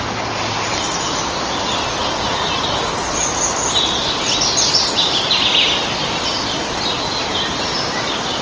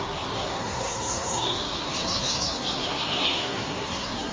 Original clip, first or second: first